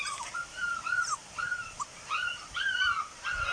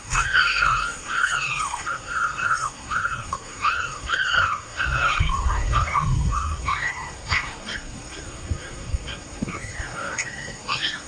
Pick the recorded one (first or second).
first